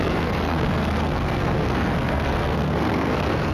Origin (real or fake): fake